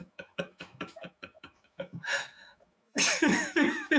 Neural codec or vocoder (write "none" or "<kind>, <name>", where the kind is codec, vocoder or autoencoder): autoencoder, DAC-VAE